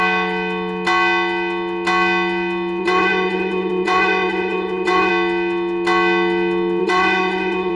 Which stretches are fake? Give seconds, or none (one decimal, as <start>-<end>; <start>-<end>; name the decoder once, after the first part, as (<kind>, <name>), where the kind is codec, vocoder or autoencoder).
2.8-5.1 (vocoder, Vocos); 6.8-7.7